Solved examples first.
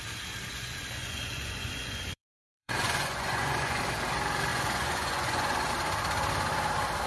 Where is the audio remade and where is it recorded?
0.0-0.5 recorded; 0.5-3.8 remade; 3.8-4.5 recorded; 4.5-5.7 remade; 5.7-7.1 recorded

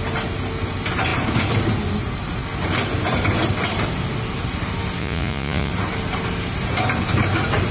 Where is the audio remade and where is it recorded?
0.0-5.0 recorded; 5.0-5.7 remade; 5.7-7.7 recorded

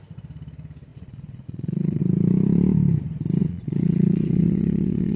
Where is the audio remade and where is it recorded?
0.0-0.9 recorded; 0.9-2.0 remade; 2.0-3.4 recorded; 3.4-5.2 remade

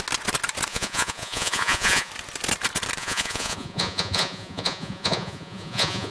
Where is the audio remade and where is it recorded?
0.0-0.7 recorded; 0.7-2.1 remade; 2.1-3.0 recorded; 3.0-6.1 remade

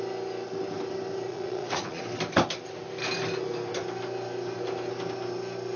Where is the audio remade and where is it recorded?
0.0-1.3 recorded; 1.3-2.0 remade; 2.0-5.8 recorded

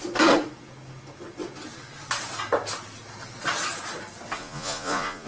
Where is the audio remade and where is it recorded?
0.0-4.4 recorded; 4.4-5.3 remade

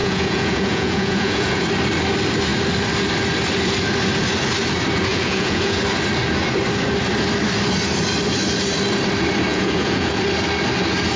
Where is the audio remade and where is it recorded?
0.0-1.6 remade; 1.6-5.1 recorded; 5.1-5.8 remade; 5.8-9.5 recorded; 9.5-10.2 remade; 10.2-11.2 recorded